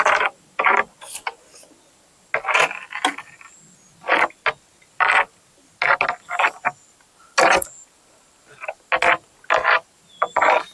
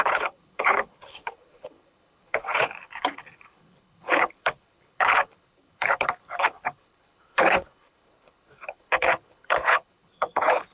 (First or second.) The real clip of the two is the first